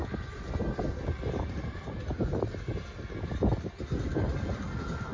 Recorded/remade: recorded